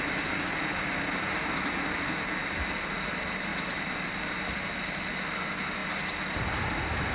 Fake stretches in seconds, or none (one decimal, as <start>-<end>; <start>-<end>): 5.8-6.5